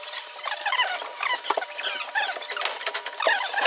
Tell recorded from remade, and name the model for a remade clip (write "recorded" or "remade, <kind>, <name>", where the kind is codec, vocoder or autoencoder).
recorded